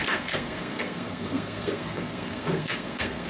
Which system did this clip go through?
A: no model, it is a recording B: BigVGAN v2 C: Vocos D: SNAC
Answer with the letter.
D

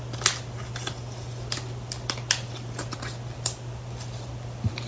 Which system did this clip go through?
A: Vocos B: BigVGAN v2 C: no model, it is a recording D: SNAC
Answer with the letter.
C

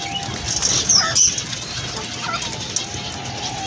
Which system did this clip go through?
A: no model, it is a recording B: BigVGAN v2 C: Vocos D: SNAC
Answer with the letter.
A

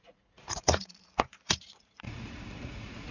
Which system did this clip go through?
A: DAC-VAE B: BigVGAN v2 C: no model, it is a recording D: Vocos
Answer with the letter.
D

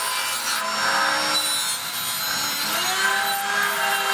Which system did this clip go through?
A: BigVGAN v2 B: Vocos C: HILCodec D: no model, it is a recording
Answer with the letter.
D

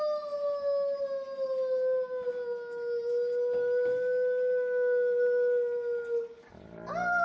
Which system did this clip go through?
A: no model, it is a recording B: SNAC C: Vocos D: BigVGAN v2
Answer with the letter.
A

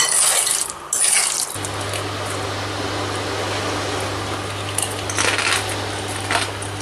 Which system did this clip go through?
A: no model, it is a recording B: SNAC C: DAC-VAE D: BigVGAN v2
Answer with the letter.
A